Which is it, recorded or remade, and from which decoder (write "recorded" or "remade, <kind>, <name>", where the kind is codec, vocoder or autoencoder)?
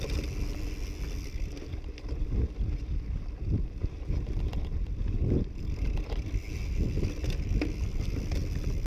recorded